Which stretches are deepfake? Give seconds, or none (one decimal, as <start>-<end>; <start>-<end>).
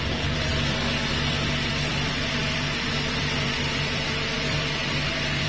0.0-0.5; 1.1-5.5